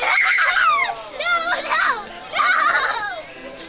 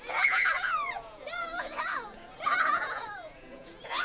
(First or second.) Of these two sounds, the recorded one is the first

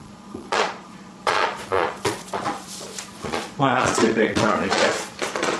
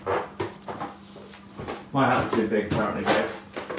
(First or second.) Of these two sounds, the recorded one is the second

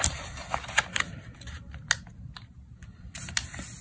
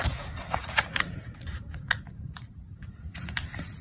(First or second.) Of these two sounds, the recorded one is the first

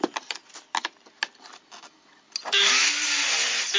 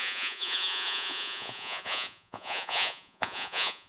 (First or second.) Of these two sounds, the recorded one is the first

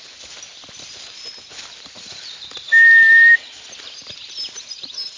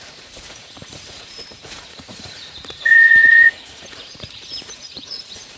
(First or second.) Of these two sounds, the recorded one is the first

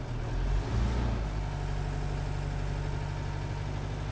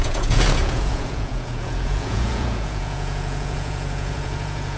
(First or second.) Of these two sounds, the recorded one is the first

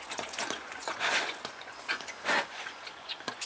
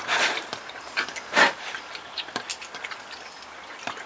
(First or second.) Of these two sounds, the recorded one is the second